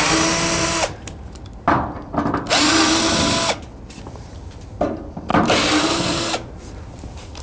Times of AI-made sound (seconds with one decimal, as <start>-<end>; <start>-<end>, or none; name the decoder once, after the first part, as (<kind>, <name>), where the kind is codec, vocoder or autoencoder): none